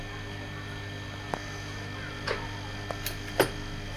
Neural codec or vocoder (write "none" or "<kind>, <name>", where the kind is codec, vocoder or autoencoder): none